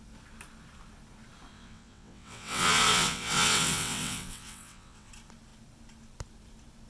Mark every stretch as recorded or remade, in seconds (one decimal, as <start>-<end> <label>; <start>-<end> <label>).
0.0-1.5 recorded; 1.5-5.1 remade; 5.1-6.9 recorded